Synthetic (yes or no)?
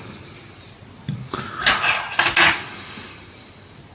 no